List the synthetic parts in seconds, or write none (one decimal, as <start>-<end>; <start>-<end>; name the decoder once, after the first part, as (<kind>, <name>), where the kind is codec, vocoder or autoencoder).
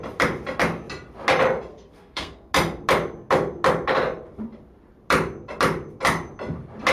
1.7-2.5 (codec, SNAC)